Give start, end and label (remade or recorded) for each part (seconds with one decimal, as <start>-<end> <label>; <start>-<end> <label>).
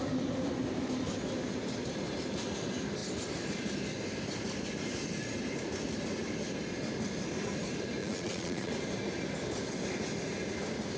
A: 0.0-8.0 recorded; 8.0-8.7 remade; 8.7-11.0 recorded